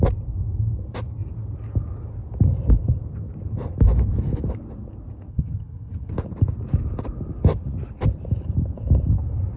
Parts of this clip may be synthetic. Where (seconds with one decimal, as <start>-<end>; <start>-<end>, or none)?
5.3-6.1